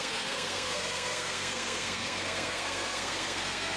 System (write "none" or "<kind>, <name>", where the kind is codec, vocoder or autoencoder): codec, SNAC